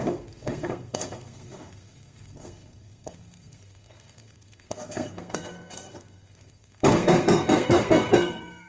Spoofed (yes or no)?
yes